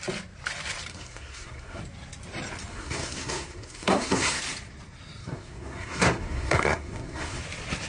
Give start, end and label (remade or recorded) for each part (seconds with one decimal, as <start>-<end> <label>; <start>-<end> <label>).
0.0-0.9 recorded; 0.9-1.8 remade; 1.8-2.7 recorded; 2.7-4.4 remade; 4.4-5.2 recorded; 5.2-7.4 remade; 7.4-7.9 recorded